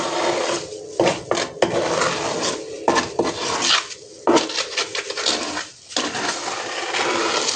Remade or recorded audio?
recorded